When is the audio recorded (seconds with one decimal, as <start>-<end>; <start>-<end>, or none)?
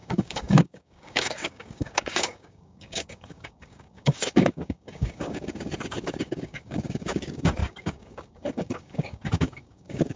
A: none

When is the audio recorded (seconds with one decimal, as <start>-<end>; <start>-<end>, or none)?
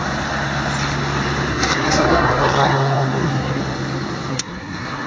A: 0.0-1.5; 3.6-4.3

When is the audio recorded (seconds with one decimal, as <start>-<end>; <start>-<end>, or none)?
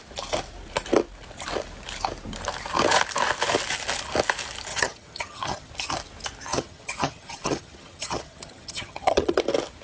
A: 0.0-4.7; 5.7-6.5; 9.4-9.8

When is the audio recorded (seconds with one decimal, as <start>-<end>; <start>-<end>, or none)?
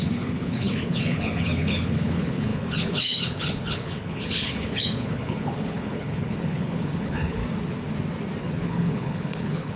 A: 7.4-8.4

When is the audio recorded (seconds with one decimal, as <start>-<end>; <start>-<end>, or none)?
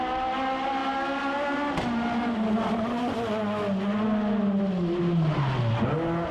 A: 0.0-6.3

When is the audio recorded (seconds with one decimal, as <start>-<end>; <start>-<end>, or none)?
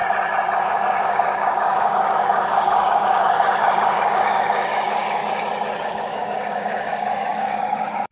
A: 0.0-0.6; 5.2-5.8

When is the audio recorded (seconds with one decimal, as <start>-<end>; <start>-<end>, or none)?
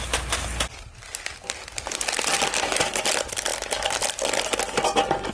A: 0.0-5.3